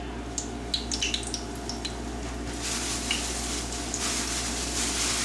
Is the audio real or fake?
real